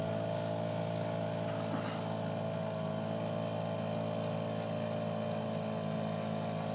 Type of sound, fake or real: real